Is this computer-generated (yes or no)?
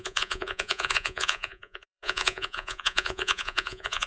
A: yes